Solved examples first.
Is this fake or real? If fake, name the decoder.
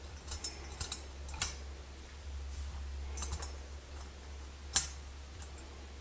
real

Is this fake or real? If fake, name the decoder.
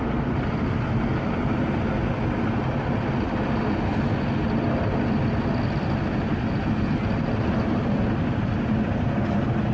real